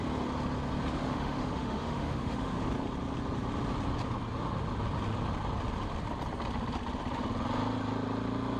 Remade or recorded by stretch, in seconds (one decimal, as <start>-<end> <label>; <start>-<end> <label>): 0.0-1.0 recorded; 1.0-2.7 remade; 2.7-8.6 recorded